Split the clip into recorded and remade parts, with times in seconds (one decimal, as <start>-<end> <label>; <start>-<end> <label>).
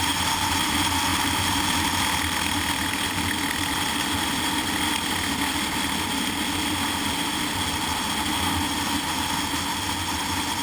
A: 0.0-1.1 recorded; 1.1-1.7 remade; 1.7-10.6 recorded